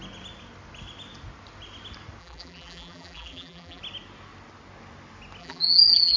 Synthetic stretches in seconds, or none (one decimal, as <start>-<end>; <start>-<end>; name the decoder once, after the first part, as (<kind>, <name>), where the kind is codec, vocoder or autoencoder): 2.2-3.8 (vocoder, BigVGAN v2); 5.4-6.2

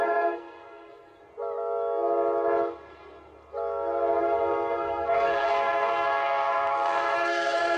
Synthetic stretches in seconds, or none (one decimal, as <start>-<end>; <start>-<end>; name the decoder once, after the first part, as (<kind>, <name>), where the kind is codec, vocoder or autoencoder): 0.0-1.2 (codec, SNAC); 4.2-7.8

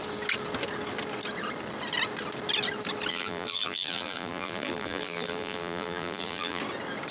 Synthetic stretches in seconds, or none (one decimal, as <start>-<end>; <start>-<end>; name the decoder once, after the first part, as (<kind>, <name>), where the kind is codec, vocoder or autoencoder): 3.1-6.6 (vocoder, BigVGAN v2)